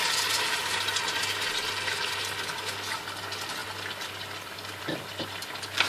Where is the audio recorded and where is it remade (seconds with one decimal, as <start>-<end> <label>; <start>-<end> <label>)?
0.0-5.9 recorded